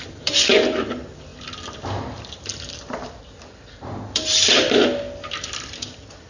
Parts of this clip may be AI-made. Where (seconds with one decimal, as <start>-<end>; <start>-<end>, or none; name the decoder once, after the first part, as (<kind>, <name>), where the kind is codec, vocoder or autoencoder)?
0.0-6.3 (vocoder, BigVGAN v2)